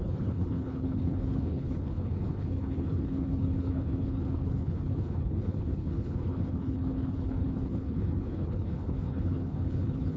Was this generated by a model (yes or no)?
yes